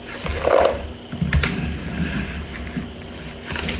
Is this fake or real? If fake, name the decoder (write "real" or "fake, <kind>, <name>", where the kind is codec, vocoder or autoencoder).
real